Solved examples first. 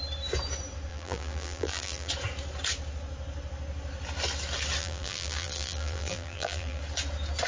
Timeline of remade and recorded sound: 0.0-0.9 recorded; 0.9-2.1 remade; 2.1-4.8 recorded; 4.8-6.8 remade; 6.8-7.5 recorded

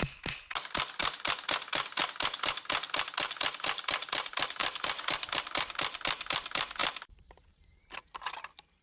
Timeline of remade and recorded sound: 0.0-8.8 recorded

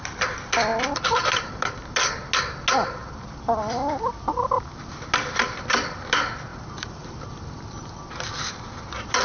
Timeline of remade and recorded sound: 0.0-6.5 recorded; 6.5-7.4 remade; 7.4-9.2 recorded